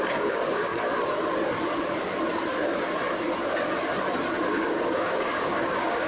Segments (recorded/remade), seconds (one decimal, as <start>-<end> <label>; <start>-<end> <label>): 0.0-0.7 remade; 0.7-4.4 recorded; 4.4-6.1 remade